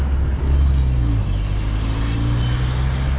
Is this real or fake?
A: real